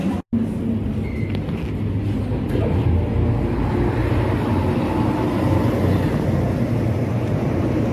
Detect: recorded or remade recorded